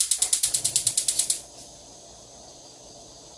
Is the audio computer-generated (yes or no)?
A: no